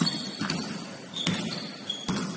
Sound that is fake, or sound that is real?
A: real